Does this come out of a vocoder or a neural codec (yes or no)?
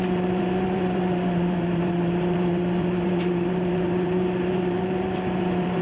yes